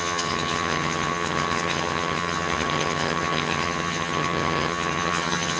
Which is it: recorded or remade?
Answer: remade